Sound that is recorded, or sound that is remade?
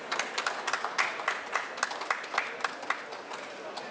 recorded